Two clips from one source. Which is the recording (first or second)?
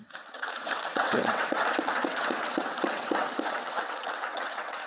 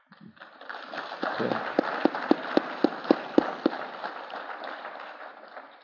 second